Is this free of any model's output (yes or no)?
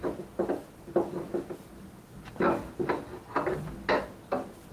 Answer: yes